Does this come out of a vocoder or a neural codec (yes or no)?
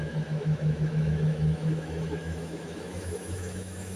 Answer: yes